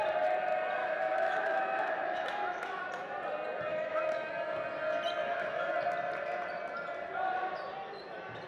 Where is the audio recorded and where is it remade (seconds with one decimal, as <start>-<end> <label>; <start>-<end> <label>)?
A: 0.0-0.8 recorded; 0.8-2.8 remade; 2.8-3.7 recorded; 3.7-4.3 remade; 4.3-5.2 recorded; 5.2-5.7 remade; 5.7-8.5 recorded